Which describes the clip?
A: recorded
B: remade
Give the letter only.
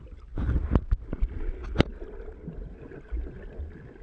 A